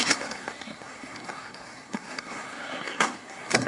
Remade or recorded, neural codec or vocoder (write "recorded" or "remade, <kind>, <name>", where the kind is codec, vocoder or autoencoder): remade, codec, SNAC